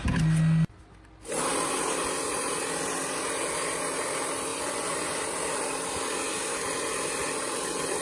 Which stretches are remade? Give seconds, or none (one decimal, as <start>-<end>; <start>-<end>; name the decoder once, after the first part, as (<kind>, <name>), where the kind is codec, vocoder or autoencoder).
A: 4.5-5.2 (vocoder, Vocos)